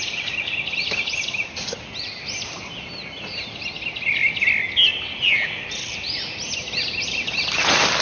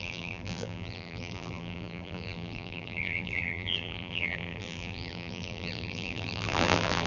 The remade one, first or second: second